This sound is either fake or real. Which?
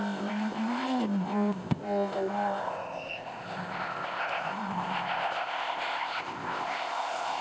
fake